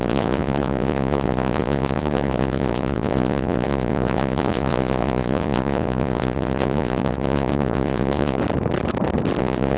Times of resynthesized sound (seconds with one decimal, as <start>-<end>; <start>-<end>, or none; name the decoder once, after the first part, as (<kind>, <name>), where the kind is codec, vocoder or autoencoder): 0.0-8.4 (vocoder, Vocos); 9.4-9.8